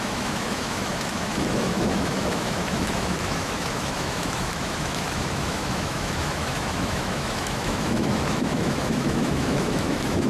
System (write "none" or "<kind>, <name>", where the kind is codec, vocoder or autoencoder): autoencoder, DAC-VAE